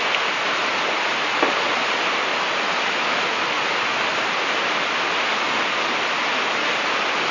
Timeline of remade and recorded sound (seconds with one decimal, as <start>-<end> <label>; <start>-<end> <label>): 0.0-7.3 recorded